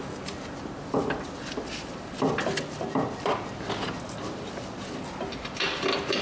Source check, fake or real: real